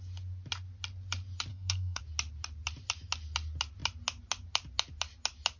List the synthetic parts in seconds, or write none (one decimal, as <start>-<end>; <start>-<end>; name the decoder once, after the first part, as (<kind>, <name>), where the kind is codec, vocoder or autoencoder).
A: 1.5-2.0 (codec, SNAC)